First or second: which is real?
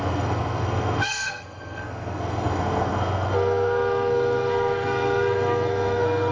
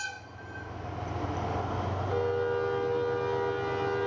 second